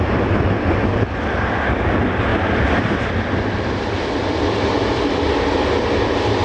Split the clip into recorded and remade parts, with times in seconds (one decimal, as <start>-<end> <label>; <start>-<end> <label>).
0.0-2.3 recorded; 2.3-5.4 remade; 5.4-6.4 recorded